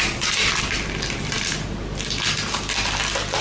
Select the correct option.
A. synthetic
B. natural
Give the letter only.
B